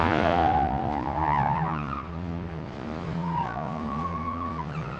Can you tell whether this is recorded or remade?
remade